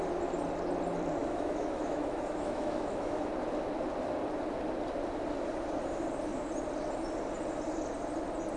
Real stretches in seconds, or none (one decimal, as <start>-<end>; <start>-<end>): 0.0-1.2; 3.3-8.6